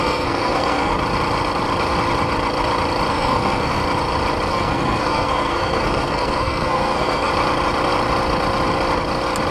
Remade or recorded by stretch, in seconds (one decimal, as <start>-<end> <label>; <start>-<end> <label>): 0.0-0.9 remade; 0.9-3.1 recorded; 3.1-3.8 remade; 3.8-4.5 recorded; 4.5-7.3 remade; 7.3-9.5 recorded